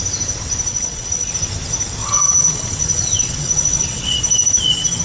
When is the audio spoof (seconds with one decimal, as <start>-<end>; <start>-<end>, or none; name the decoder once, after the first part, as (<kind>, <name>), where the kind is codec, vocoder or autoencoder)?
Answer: 0.7-1.3 (vocoder, WaveNeXt); 2.0-4.2